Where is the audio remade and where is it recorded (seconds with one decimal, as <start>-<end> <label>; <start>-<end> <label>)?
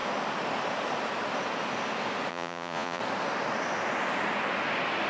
0.0-2.3 recorded; 2.3-3.0 remade; 3.0-5.1 recorded